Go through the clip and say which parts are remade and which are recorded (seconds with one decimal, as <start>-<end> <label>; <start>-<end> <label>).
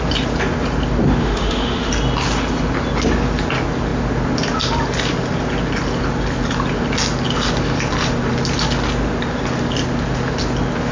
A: 0.0-1.2 recorded; 1.2-1.9 remade; 1.9-10.9 recorded